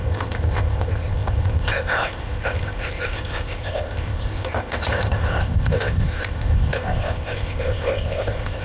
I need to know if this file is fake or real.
fake